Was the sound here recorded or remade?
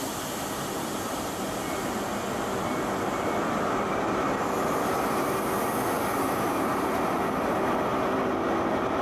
recorded